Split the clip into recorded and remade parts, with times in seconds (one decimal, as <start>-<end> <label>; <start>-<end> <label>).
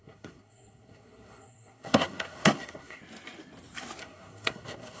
0.0-3.0 remade; 3.0-4.0 recorded; 4.0-5.0 remade